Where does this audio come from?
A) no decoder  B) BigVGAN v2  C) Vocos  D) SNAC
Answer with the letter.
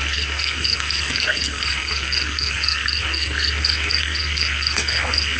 D